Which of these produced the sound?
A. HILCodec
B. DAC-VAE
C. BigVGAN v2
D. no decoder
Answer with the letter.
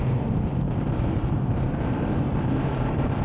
C